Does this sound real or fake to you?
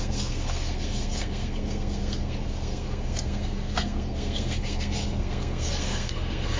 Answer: fake